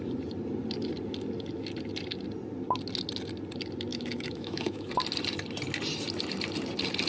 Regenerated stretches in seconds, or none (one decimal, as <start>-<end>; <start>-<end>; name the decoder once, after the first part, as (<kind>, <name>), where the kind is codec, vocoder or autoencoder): 3.9-4.9 (autoencoder, DAC-VAE)